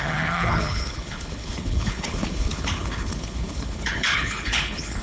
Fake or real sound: fake